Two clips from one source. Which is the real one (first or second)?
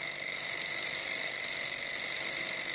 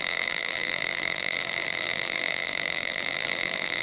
first